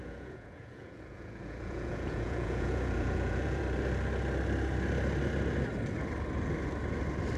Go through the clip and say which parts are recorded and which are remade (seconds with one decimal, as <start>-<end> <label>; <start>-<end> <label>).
0.0-3.6 remade; 3.6-7.4 recorded